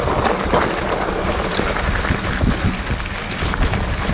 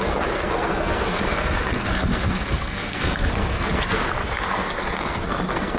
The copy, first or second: second